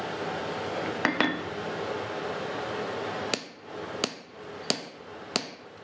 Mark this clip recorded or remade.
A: recorded